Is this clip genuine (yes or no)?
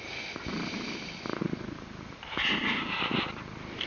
yes